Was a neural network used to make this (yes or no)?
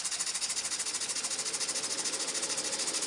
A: no